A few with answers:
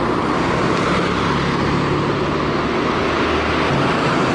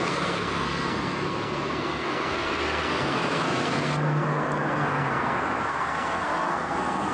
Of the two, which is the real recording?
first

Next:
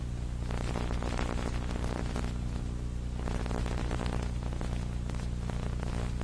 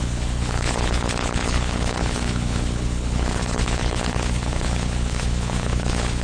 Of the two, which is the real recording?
first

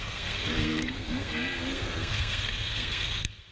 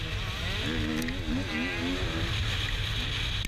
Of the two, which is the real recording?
second